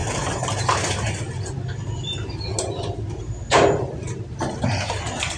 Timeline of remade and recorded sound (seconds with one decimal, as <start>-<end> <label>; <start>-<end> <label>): 0.0-5.4 remade